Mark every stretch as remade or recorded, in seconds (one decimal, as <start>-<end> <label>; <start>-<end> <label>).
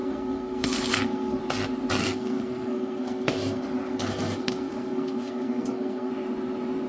0.0-1.4 remade; 1.4-2.0 recorded; 2.0-6.1 remade; 6.1-6.9 recorded